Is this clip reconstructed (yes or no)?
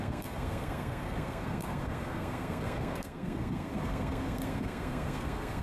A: yes